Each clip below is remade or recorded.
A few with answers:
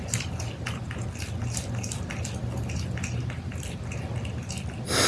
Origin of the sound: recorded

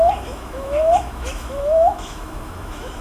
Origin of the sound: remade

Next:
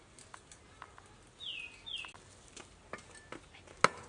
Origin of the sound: recorded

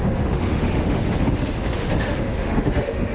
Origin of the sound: remade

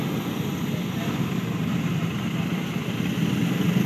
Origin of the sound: recorded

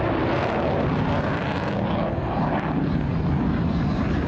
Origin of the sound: recorded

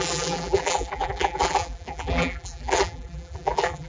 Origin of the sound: remade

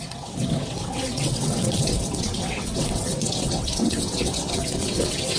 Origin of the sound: remade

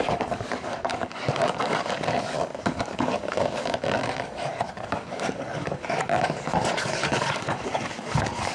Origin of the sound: remade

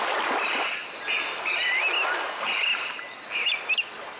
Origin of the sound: recorded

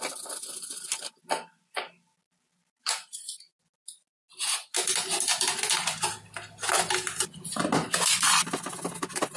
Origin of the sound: recorded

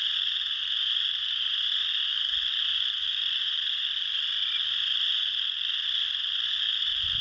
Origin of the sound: recorded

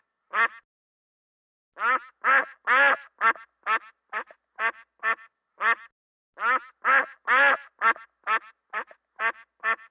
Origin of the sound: recorded